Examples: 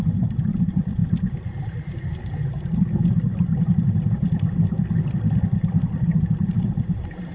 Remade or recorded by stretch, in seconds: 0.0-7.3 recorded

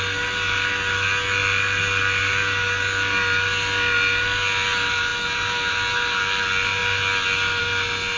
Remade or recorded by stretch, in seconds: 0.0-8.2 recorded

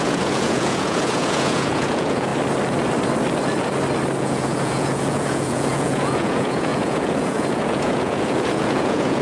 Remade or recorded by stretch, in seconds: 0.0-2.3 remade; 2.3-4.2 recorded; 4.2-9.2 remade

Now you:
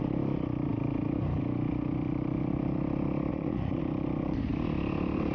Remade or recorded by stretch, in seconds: 0.0-3.3 recorded; 3.3-3.8 remade; 3.8-5.3 recorded